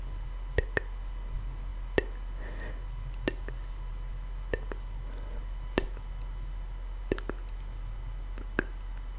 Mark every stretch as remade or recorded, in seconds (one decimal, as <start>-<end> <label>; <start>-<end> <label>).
0.0-9.2 recorded